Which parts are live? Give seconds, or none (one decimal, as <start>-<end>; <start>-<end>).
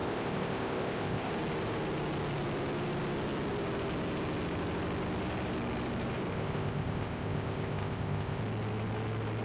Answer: 1.3-6.3; 8.4-9.4